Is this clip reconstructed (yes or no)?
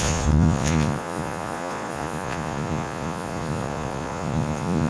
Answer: yes